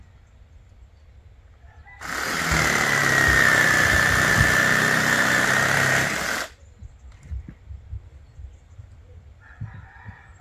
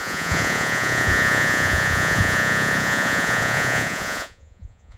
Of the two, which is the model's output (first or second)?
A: second